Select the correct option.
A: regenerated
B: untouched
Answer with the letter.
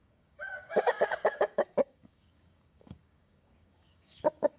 A